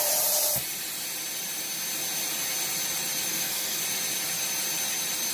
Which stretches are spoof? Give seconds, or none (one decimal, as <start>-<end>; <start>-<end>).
3.3-3.8